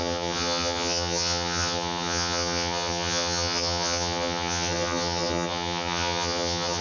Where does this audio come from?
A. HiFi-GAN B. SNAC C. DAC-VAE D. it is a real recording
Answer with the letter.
A